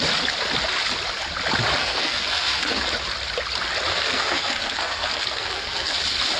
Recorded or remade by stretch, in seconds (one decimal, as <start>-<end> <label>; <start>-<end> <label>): 0.0-1.8 recorded; 1.8-2.9 remade; 2.9-3.9 recorded; 3.9-6.0 remade; 6.0-6.4 recorded